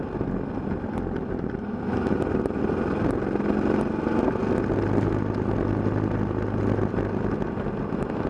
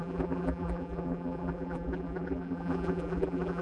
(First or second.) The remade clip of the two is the second